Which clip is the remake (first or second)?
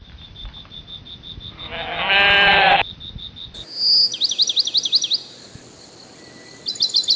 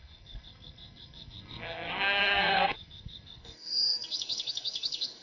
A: second